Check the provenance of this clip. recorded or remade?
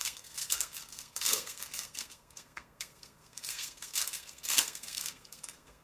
remade